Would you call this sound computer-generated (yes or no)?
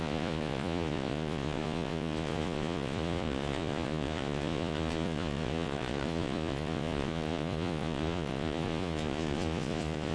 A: yes